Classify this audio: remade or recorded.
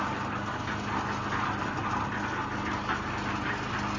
recorded